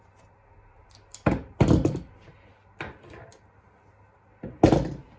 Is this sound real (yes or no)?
yes